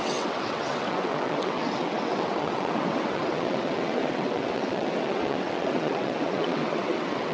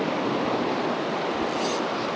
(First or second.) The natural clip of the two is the second